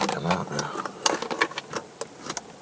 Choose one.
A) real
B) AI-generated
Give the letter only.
A